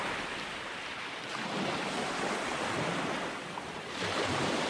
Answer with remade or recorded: remade